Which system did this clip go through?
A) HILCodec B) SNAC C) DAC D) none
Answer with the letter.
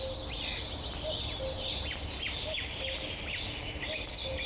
D